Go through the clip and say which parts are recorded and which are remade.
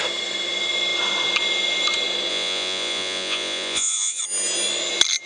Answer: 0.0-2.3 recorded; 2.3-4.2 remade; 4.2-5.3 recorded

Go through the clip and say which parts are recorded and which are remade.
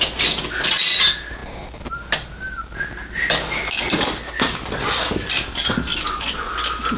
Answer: 0.0-5.9 recorded; 5.9-6.5 remade; 6.5-7.0 recorded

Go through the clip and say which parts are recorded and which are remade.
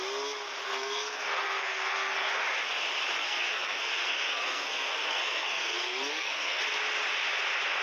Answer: 0.0-0.6 recorded; 0.6-2.3 remade; 2.3-3.2 recorded; 3.2-6.6 remade; 6.6-7.8 recorded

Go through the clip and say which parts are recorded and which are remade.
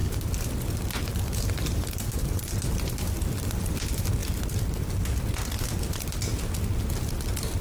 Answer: 0.0-1.1 recorded; 1.1-3.1 remade; 3.1-7.6 recorded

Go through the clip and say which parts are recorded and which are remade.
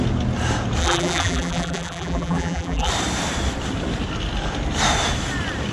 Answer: 0.0-0.8 recorded; 0.8-2.9 remade; 2.9-5.7 recorded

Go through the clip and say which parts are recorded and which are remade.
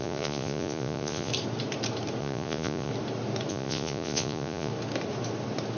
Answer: 0.0-1.3 remade; 1.3-2.2 recorded; 2.2-2.9 remade; 2.9-3.5 recorded; 3.5-4.7 remade; 4.7-5.8 recorded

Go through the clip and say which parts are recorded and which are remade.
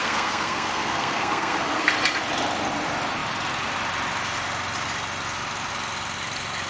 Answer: 0.0-1.9 remade; 1.9-6.7 recorded